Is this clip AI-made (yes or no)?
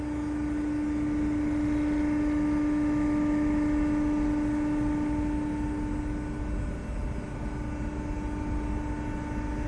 no